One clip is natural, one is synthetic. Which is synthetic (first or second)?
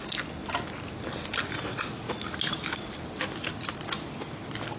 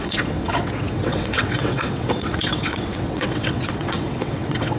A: second